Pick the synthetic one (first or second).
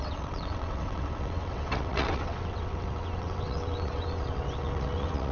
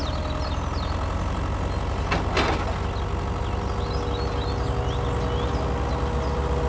first